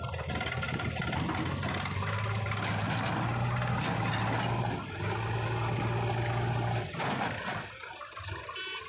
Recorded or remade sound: recorded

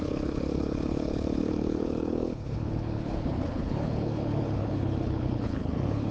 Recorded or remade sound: remade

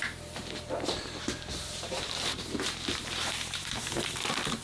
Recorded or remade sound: remade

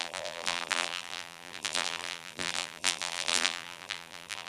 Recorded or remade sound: remade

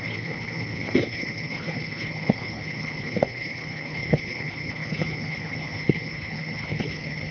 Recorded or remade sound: remade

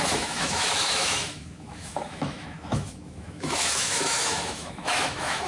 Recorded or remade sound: remade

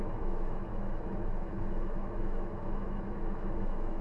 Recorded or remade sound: remade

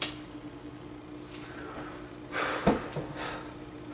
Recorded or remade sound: recorded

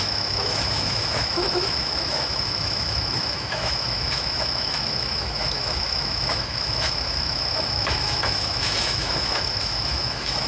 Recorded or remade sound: remade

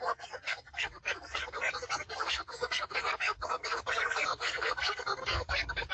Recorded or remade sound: remade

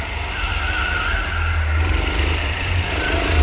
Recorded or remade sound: recorded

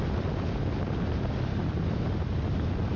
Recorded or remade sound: recorded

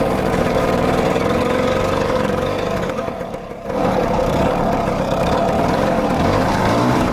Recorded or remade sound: remade